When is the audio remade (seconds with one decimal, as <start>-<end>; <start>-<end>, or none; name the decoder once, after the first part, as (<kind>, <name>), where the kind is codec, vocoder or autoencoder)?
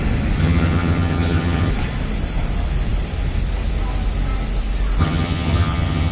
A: 0.4-1.7 (vocoder, HiFi-GAN); 5.0-6.1